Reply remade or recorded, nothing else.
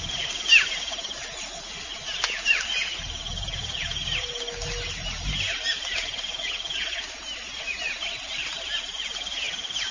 recorded